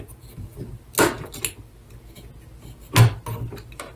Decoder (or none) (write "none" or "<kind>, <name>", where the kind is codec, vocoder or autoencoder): none